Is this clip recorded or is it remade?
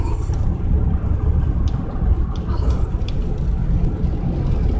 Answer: recorded